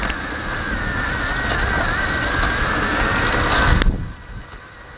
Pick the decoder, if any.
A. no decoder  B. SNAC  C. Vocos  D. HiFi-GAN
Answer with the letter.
A